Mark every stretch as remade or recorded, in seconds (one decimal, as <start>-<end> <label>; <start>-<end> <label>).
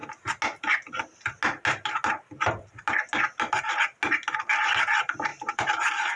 0.0-5.3 recorded; 5.3-6.2 remade